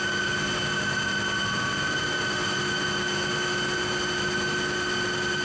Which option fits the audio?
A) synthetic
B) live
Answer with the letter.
B